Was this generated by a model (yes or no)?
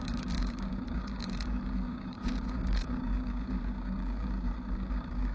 yes